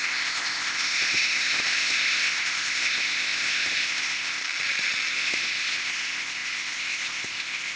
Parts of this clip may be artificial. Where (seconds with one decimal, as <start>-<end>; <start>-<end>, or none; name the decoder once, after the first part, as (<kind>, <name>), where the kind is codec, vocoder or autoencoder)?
0.0-4.4 (codec, ZipCodec); 5.1-7.8